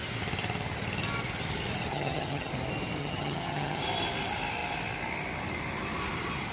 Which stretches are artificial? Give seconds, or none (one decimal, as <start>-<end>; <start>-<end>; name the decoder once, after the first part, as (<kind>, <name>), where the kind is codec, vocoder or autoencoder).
1.9-2.5 (vocoder, HiFi-GAN); 3.0-3.8